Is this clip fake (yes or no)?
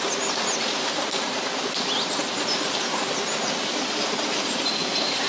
no